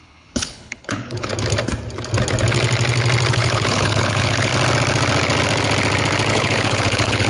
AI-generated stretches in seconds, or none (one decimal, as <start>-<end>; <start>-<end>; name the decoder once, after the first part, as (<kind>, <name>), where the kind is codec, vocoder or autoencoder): 0.0-1.3 (codec, HILCodec); 3.3-4.5; 6.3-7.3